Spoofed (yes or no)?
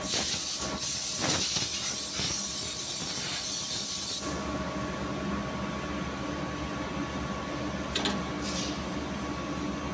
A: no